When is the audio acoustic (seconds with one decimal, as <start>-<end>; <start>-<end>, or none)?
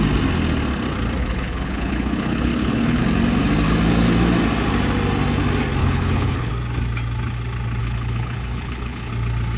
0.0-1.2; 3.0-5.8; 6.5-7.8; 9.1-9.6